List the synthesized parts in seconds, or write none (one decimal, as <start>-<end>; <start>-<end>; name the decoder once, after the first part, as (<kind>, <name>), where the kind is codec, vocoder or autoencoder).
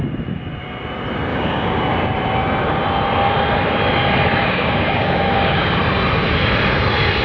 1.3-1.8 (codec, DAC); 4.4-5.8